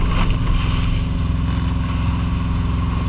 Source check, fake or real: real